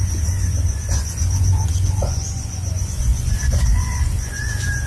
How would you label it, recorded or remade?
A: remade